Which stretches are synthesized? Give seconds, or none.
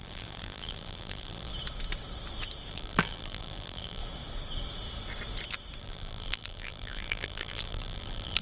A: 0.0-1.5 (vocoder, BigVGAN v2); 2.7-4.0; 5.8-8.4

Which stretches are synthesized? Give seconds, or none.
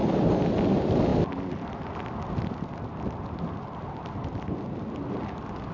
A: none